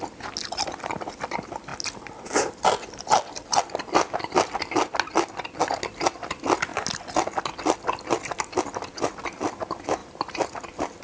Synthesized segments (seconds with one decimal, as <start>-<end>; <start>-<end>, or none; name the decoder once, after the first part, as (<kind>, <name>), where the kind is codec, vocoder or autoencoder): 10.0-11.0 (vocoder, BigVGAN v2)